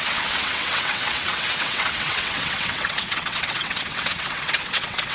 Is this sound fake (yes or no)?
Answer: yes